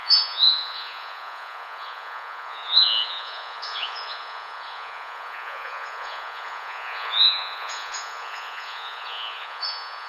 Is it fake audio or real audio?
fake